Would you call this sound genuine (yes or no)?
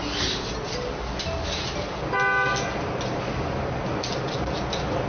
yes